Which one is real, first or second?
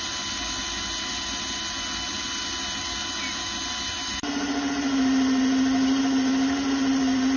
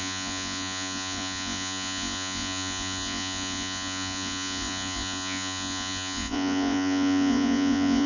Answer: first